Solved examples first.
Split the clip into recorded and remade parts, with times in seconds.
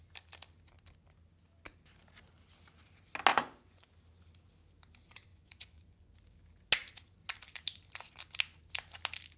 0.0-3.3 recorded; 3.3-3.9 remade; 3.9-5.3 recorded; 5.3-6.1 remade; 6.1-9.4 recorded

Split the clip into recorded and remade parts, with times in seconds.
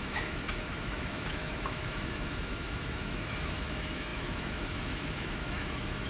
0.0-6.1 remade